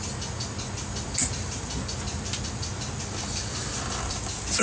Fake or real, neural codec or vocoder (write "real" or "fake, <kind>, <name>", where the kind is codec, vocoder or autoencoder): real